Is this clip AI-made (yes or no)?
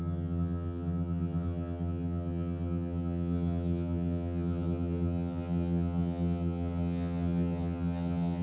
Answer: yes